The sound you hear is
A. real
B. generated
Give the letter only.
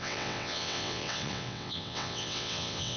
B